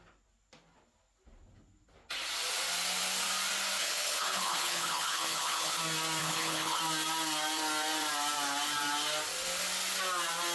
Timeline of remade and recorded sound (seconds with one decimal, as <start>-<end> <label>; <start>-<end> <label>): 0.0-3.8 recorded; 3.8-5.8 remade; 5.8-6.2 recorded; 6.2-6.8 remade; 6.8-10.5 recorded